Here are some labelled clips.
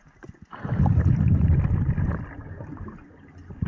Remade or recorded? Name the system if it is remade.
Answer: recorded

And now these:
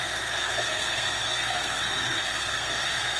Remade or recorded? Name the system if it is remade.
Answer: remade, codec, SNAC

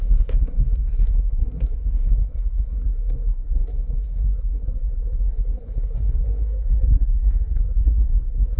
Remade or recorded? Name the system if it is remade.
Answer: remade, codec, SNAC